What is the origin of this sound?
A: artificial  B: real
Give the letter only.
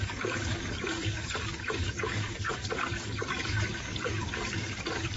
A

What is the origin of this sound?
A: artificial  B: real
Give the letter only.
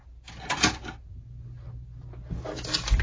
B